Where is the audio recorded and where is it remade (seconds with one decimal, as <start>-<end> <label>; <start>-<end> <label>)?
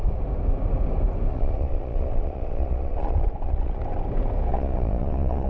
0.0-1.3 recorded; 1.3-3.8 remade; 3.8-4.5 recorded; 4.5-5.5 remade